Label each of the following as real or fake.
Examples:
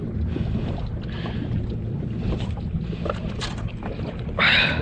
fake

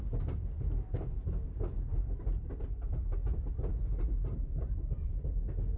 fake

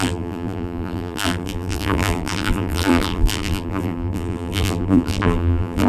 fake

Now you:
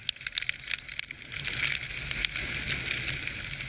real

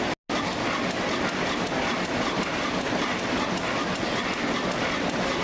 real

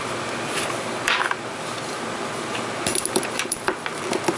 real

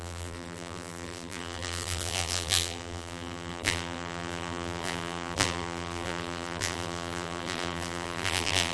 fake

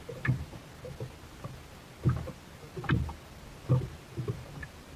real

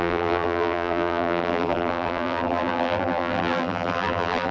fake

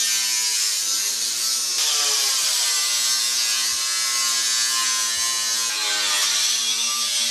real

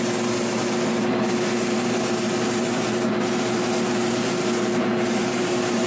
real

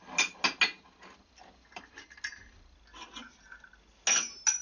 real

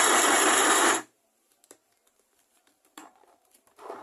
fake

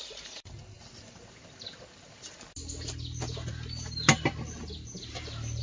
real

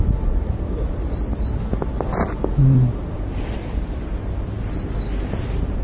real